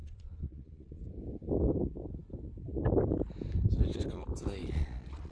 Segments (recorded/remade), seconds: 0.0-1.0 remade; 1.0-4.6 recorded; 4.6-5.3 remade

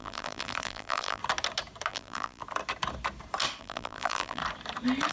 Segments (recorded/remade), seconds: 0.0-1.2 remade; 1.2-1.9 recorded; 1.9-2.4 remade; 2.4-3.6 recorded; 3.6-4.4 remade; 4.4-5.1 recorded

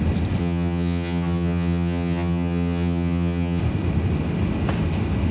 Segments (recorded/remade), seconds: 0.0-0.4 recorded; 0.4-3.6 remade; 3.6-5.3 recorded

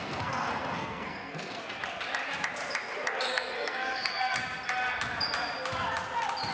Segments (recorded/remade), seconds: 0.0-1.8 remade; 1.8-3.2 recorded; 3.2-4.4 remade; 4.4-6.5 recorded

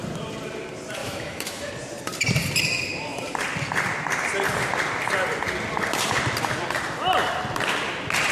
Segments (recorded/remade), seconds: 0.0-1.0 recorded; 1.0-1.7 remade; 1.7-8.3 recorded